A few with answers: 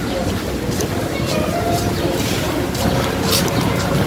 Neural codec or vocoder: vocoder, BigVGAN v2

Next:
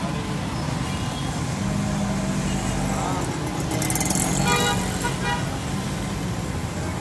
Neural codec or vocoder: none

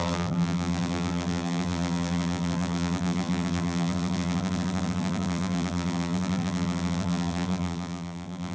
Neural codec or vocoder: vocoder, BigVGAN v2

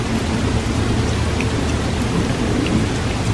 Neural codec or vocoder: none